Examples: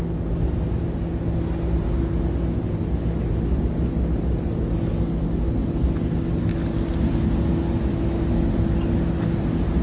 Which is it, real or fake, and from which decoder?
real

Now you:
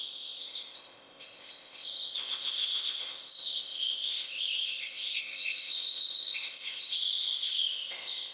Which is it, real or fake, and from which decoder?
fake, codec, ZipCodec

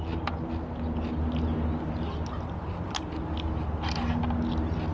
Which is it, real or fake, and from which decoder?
real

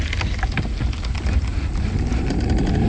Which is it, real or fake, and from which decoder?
real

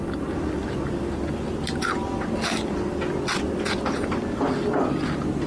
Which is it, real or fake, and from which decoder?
real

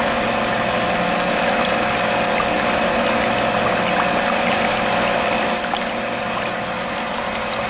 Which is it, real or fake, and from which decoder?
real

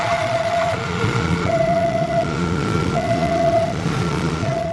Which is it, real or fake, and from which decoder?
fake, vocoder, Vocos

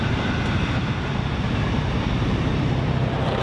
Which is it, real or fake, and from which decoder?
fake, vocoder, BigVGAN v2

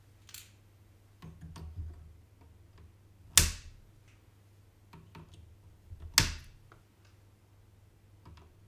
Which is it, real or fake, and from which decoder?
real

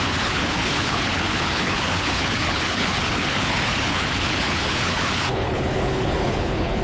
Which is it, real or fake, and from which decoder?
fake, codec, HILCodec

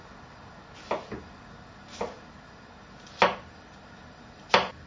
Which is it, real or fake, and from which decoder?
real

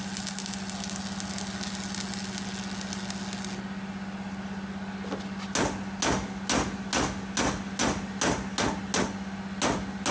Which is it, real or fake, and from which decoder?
real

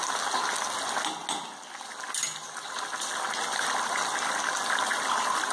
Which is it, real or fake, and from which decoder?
real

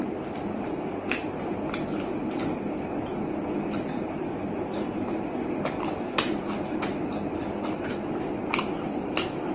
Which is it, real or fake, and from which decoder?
real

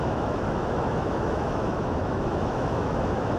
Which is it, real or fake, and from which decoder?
fake, autoencoder, DAC-VAE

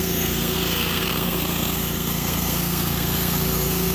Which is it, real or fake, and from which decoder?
fake, codec, SNAC